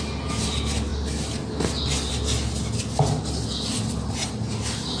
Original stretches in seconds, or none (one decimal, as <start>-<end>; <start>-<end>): 0.0-5.0